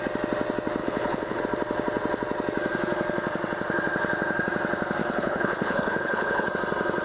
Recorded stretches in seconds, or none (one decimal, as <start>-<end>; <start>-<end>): 0.0-0.8; 1.4-5.0; 6.5-7.0